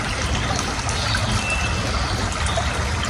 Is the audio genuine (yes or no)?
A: yes